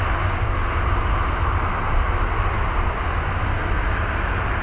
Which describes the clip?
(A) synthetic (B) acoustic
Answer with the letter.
B